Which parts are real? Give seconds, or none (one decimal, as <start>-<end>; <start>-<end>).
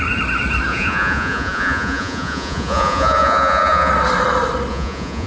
0.0-0.7; 3.9-4.7